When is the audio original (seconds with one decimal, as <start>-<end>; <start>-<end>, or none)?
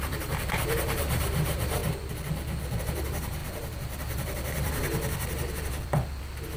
1.8-2.8; 3.4-6.6